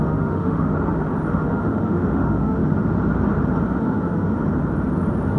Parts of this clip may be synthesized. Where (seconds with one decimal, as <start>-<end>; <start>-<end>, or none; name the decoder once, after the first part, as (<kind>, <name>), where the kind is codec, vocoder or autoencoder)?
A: 0.0-0.7 (autoencoder, DAC-VAE); 1.3-2.6; 3.8-4.4